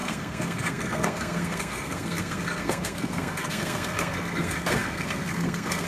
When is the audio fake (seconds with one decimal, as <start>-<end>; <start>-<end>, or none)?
0.0-5.9